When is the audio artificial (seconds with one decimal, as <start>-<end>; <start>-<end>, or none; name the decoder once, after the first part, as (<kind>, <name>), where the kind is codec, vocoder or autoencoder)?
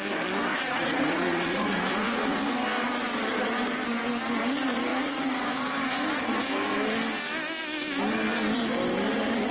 0.5-2.4 (vocoder, Vocos); 4.9-5.4